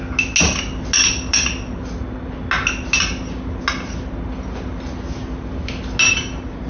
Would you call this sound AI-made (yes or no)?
no